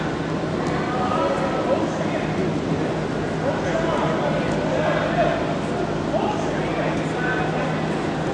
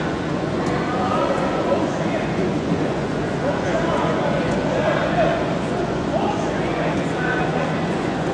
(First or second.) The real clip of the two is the first